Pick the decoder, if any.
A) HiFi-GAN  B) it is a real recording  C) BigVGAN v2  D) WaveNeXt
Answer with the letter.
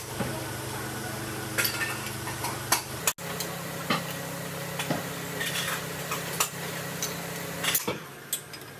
B